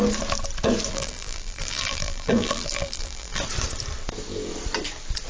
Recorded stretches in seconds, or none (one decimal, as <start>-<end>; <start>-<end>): 0.0-0.9; 3.4-5.3